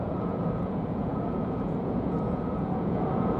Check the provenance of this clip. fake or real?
fake